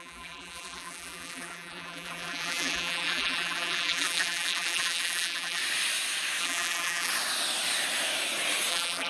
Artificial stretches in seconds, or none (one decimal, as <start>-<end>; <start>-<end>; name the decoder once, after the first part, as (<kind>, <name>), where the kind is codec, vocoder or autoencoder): 0.0-5.6 (vocoder, BigVGAN v2); 6.4-7.1; 8.7-9.1

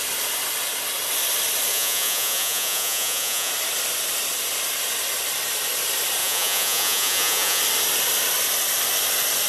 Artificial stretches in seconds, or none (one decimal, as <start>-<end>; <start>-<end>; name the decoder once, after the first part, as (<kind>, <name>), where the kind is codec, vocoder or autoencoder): 1.7-3.5 (vocoder, Vocos); 6.2-7.6

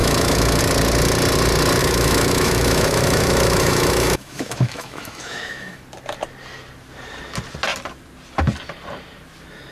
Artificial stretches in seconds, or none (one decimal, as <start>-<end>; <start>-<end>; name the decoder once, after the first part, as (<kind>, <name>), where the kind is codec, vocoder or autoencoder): 0.0-0.6 (autoencoder, DAC-VAE); 1.8-5.8

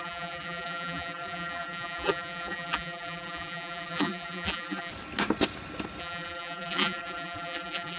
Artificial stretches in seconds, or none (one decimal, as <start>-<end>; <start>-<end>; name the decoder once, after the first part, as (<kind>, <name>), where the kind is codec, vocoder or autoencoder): 0.0-4.9 (vocoder, BigVGAN v2); 6.0-8.0